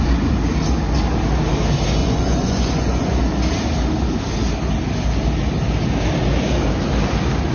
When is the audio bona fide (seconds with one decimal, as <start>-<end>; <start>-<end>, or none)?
0.0-2.0; 3.2-7.5